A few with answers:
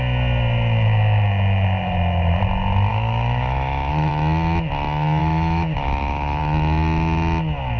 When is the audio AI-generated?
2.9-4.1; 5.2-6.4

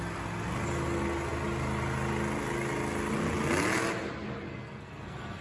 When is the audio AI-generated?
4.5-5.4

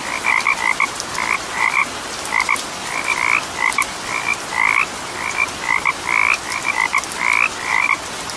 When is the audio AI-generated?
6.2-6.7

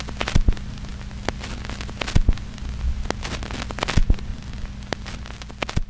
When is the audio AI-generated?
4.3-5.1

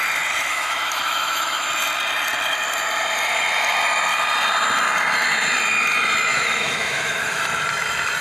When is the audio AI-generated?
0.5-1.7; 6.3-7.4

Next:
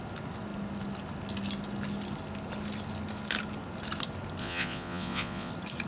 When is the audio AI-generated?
4.4-5.5

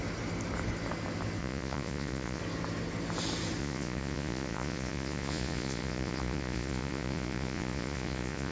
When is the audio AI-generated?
1.4-2.4; 3.6-8.5

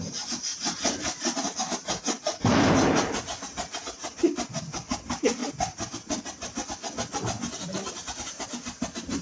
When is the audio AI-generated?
0.0-3.3; 4.1-5.4; 7.5-9.2